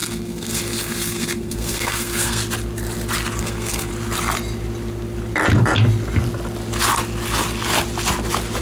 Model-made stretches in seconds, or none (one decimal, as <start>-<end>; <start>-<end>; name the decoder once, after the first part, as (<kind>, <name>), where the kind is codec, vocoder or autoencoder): 0.0-2.4 (codec, SNAC); 3.4-3.9